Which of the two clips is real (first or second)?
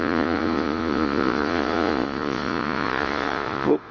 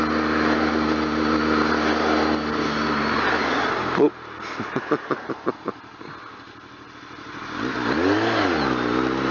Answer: second